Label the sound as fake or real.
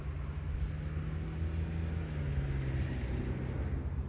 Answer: real